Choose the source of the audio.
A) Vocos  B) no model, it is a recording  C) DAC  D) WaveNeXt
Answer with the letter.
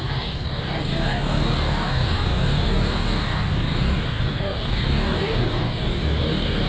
C